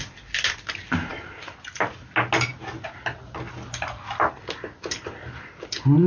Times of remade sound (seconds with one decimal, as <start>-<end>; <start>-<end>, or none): none